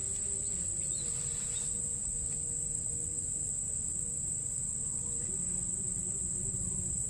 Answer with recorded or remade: recorded